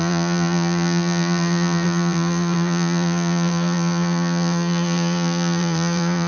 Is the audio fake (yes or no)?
yes